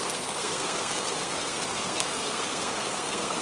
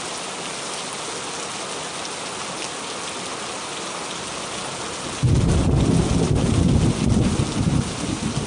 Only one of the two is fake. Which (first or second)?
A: first